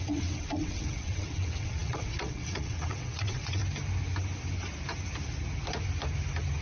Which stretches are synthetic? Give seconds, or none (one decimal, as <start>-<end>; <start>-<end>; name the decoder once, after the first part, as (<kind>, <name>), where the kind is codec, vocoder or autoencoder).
0.0-3.6 (vocoder, WaveNeXt)